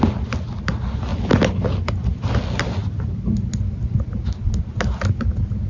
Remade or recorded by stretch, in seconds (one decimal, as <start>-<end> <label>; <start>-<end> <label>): 0.0-5.7 recorded